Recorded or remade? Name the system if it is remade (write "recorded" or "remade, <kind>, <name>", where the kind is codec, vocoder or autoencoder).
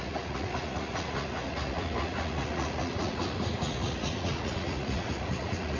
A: remade, vocoder, Vocos